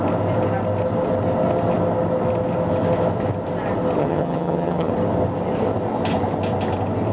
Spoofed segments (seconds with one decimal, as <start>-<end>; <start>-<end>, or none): 4.0-4.9